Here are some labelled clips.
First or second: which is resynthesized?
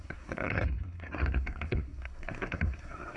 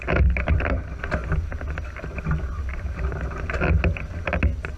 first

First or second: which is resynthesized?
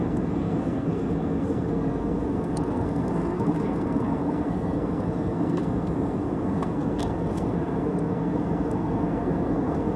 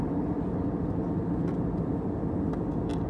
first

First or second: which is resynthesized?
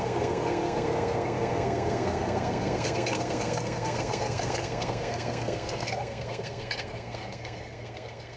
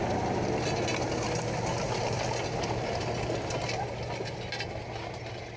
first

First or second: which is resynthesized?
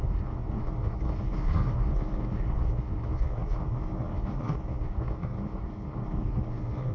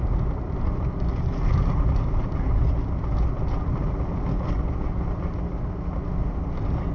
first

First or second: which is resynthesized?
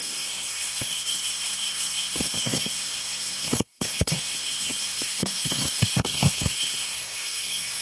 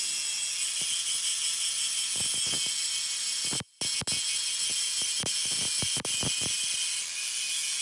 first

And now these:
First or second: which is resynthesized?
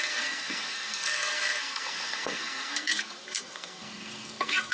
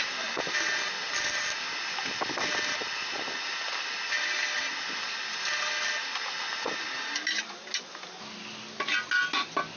first